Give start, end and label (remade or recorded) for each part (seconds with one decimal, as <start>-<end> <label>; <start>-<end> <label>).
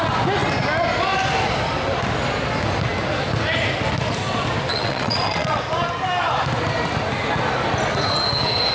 0.0-4.7 recorded; 4.7-5.6 remade; 5.6-8.7 recorded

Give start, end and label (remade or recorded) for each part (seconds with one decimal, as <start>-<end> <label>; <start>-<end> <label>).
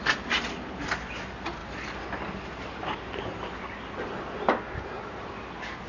0.0-5.9 recorded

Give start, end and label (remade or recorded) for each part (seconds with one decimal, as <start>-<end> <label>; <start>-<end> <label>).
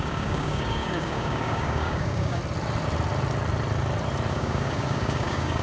0.0-2.4 remade; 2.4-4.3 recorded; 4.3-5.6 remade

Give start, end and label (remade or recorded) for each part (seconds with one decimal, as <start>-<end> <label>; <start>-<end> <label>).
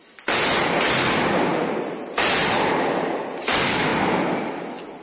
0.0-5.0 recorded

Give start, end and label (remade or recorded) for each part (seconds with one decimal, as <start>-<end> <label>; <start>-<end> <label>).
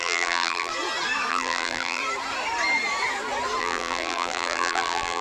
0.0-0.7 remade; 0.7-1.3 recorded; 1.3-2.0 remade; 2.0-3.6 recorded; 3.6-5.2 remade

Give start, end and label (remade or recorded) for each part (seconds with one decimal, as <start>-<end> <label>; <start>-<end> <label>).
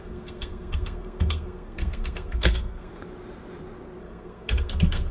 0.0-2.9 remade; 2.9-4.0 recorded; 4.0-5.1 remade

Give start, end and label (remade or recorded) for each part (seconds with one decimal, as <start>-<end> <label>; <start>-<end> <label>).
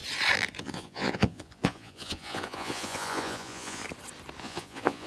0.0-0.6 recorded; 0.6-3.8 remade; 3.8-4.4 recorded; 4.4-5.1 remade